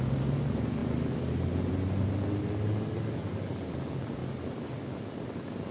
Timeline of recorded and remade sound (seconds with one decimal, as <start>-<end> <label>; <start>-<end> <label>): 0.0-5.7 recorded